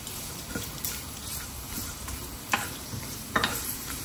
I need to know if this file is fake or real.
fake